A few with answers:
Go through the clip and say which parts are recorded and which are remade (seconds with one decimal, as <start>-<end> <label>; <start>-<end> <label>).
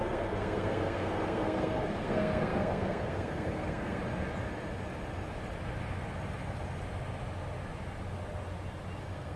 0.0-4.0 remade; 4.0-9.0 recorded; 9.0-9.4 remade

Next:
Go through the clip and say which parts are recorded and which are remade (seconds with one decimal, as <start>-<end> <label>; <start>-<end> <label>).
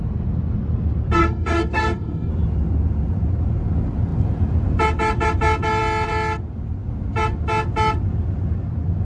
0.0-1.2 recorded; 1.2-2.3 remade; 2.3-9.0 recorded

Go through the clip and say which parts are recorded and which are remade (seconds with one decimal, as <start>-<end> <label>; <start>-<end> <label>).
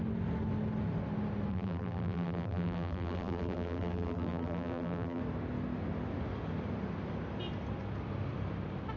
0.0-1.5 recorded; 1.5-5.2 remade; 5.2-9.0 recorded